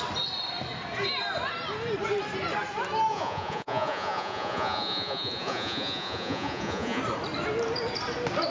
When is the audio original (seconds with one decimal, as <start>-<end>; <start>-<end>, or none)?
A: 0.0-3.1; 7.0-8.5